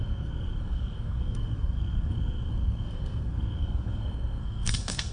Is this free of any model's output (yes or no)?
no